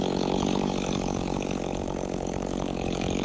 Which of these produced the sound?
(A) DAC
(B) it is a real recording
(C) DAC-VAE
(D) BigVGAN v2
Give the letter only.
A